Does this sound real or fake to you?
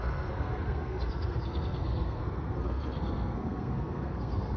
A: fake